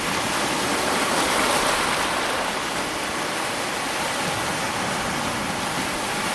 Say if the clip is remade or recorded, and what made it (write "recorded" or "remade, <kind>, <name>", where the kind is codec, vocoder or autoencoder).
recorded